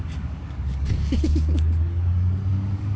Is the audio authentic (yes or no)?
no